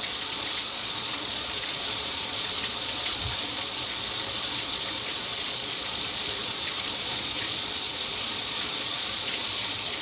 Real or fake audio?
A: fake